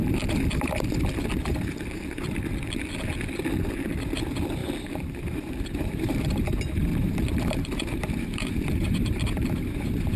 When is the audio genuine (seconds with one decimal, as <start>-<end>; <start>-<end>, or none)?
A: 0.0-4.6; 6.4-6.9